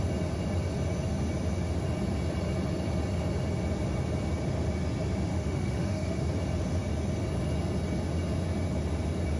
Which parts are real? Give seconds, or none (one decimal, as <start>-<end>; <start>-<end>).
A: 0.0-5.3; 6.3-9.4